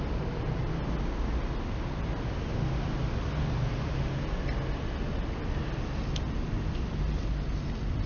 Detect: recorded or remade recorded